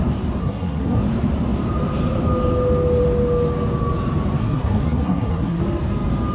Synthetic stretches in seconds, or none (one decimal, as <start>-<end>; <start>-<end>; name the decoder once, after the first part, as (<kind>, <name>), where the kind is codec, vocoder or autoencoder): 0.4-1.0 (codec, SNAC); 4.4-5.6